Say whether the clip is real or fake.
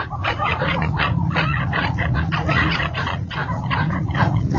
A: fake